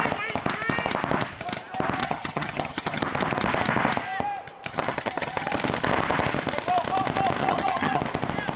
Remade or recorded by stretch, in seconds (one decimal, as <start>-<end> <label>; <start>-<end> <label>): 0.0-2.0 recorded; 2.0-3.0 remade; 3.0-4.7 recorded; 4.7-5.5 remade; 5.5-7.4 recorded; 7.4-8.0 remade; 8.0-8.6 recorded